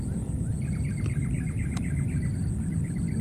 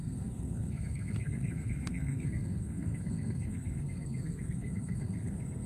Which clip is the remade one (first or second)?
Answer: second